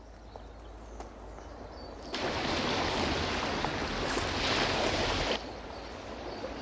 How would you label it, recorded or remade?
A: recorded